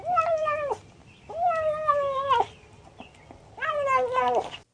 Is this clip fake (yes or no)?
no